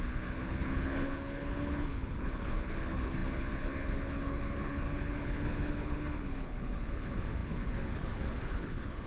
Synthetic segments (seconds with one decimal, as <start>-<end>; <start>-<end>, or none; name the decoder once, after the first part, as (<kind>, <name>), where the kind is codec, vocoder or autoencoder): 0.0-9.1 (codec, HILCodec)